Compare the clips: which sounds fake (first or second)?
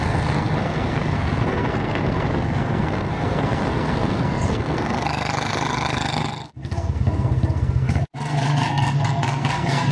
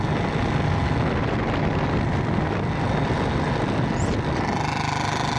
first